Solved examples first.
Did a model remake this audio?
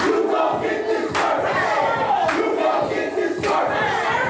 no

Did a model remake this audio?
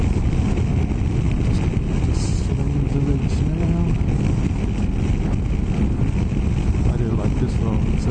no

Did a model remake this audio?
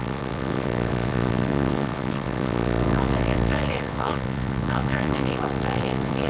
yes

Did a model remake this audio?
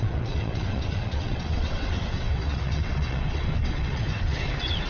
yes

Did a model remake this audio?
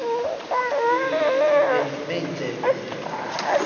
no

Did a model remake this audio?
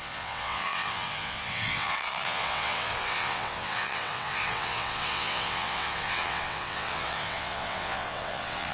yes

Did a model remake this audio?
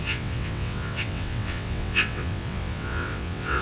yes